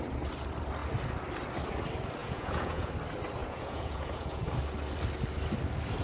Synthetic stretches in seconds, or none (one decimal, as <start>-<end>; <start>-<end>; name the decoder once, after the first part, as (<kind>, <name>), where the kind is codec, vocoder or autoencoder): 2.2-2.9 (vocoder, Vocos); 3.4-4.5